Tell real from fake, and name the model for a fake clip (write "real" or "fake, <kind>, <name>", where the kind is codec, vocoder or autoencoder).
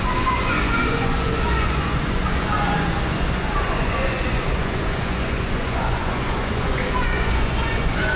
fake, vocoder, Vocos